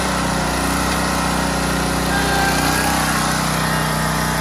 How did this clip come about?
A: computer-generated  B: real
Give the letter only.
B